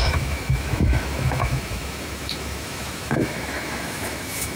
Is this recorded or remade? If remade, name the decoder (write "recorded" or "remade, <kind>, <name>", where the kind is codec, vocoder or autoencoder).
remade, autoencoder, DAC-VAE